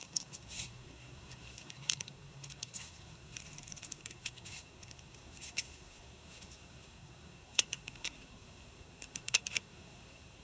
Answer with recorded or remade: remade